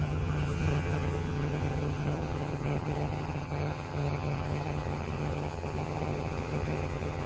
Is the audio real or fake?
fake